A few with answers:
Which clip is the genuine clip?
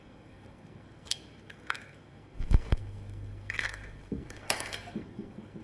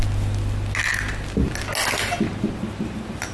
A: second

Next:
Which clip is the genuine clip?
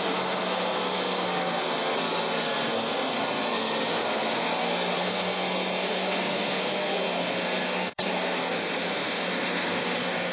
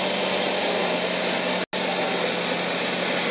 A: second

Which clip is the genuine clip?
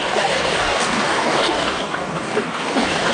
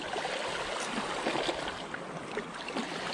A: second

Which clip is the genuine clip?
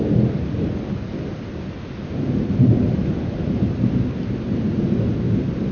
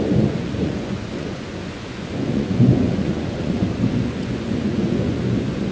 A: first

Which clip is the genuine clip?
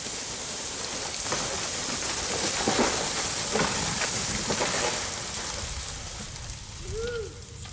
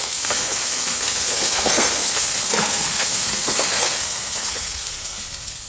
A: first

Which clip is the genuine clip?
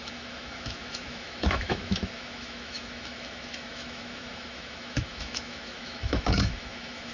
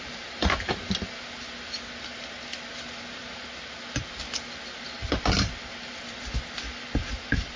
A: second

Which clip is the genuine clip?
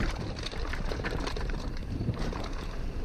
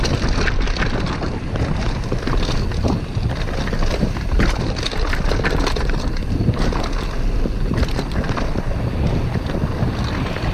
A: second